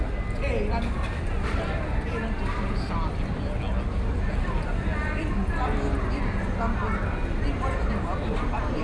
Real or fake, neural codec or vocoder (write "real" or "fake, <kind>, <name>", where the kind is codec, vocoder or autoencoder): real